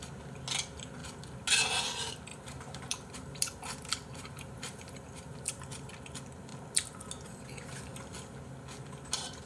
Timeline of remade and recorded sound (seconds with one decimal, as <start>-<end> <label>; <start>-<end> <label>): 0.0-2.3 recorded; 2.3-5.9 remade; 5.9-9.5 recorded